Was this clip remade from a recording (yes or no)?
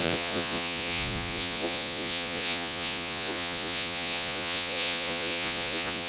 yes